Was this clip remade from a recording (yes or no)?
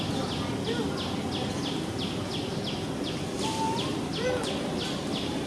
no